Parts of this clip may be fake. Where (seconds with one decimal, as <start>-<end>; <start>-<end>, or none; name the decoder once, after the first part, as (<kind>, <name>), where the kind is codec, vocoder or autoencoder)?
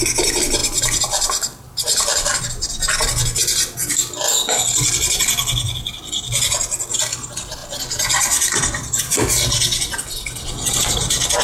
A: 0.6-2.4 (vocoder, BigVGAN v2); 7.6-9.0